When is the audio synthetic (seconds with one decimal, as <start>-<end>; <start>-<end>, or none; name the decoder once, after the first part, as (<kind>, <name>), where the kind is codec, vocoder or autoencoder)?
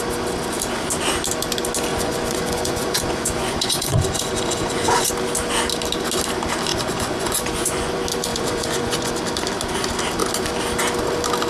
1.9-5.1 (vocoder, Vocos); 6.7-7.9; 8.3-9.1